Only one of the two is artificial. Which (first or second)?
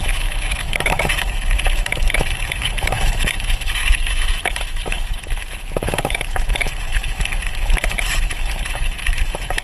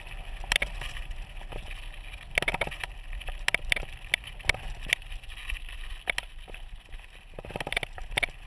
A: first